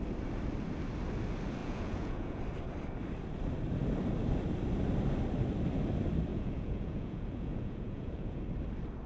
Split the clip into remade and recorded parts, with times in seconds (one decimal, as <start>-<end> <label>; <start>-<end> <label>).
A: 0.0-1.6 recorded; 1.6-2.4 remade; 2.4-6.3 recorded; 6.3-8.4 remade; 8.4-9.1 recorded

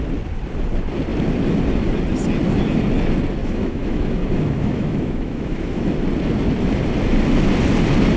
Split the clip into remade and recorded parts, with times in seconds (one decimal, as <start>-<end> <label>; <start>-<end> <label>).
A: 0.0-3.4 recorded; 3.4-5.9 remade; 5.9-8.2 recorded